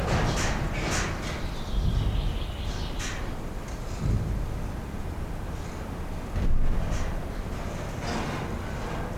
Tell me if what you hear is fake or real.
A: real